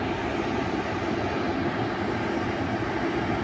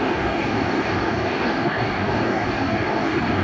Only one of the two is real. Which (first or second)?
first